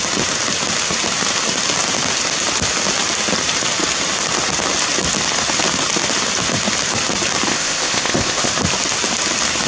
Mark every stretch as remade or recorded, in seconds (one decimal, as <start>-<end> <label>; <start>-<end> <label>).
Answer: 0.0-7.5 recorded; 7.5-8.5 remade; 8.5-9.7 recorded